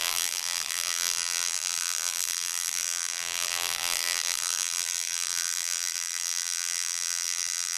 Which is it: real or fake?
fake